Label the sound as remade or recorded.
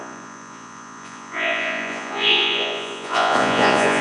remade